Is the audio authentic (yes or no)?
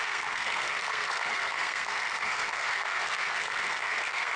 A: no